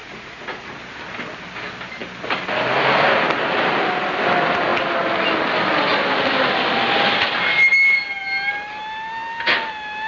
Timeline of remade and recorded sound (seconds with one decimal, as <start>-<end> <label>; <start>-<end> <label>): 0.0-0.7 remade; 0.7-10.1 recorded